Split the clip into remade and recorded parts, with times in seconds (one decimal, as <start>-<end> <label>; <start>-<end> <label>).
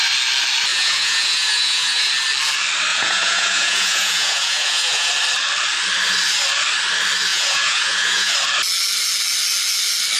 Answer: 0.0-0.7 recorded; 0.7-2.1 remade; 2.1-2.9 recorded; 2.9-5.1 remade; 5.1-7.3 recorded; 7.3-8.3 remade; 8.3-10.2 recorded